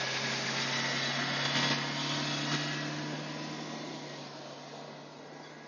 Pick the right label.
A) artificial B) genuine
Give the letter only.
B